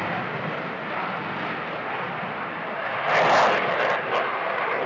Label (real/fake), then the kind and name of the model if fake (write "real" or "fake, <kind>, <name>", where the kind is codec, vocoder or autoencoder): real